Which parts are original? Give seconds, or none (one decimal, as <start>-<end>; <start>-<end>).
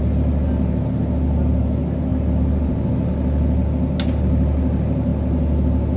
0.0-6.0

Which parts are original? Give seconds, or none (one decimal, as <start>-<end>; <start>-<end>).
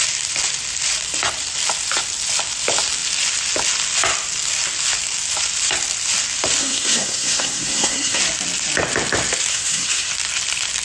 0.0-6.6; 8.2-9.5; 10.1-10.8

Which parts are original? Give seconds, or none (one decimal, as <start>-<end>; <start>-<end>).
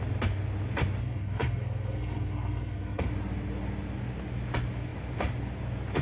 0.0-1.0; 3.1-6.0